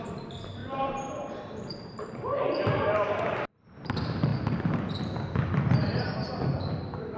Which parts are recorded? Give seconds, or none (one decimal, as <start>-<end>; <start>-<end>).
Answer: 4.3-6.8